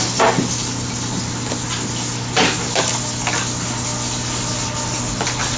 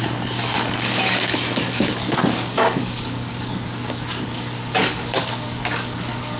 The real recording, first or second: first